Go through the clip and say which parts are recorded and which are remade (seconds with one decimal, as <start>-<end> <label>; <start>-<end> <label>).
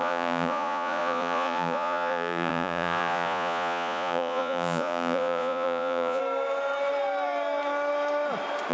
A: 0.0-6.2 remade; 6.2-8.7 recorded